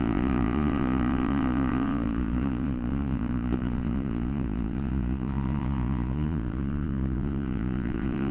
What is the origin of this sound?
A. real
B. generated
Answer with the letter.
B